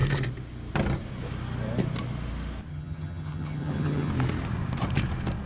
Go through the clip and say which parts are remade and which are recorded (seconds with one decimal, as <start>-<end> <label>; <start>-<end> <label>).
0.0-2.7 recorded; 2.7-4.1 remade; 4.1-5.5 recorded